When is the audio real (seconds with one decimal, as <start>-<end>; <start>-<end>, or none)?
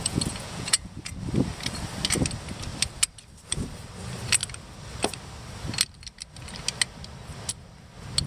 1.1-8.3